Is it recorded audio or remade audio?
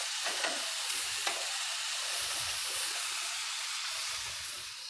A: remade